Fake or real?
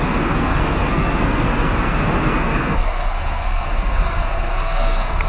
fake